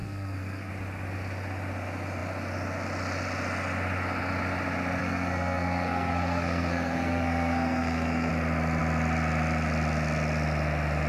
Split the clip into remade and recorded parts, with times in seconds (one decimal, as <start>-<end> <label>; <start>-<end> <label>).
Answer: 0.0-0.7 remade; 0.7-5.0 recorded; 5.0-8.3 remade; 8.3-11.1 recorded